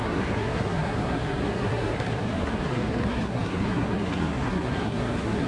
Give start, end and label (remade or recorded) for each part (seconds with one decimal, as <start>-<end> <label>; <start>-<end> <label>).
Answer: 0.0-5.5 remade